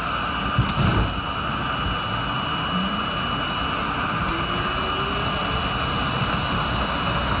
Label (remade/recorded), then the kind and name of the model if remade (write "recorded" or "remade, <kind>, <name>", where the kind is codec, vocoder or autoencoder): recorded